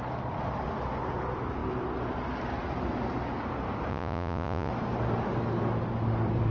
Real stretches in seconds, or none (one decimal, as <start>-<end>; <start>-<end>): 0.0-3.9; 4.7-6.5